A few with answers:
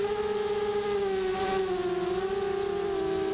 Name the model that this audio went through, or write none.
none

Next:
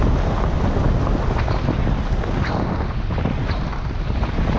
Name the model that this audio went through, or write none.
none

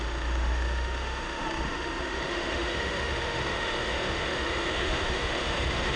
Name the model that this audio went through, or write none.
autoencoder, DAC-VAE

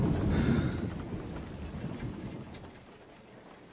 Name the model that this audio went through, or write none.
none